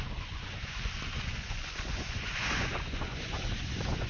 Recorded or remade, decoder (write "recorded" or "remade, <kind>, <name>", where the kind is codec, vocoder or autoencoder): remade, vocoder, Vocos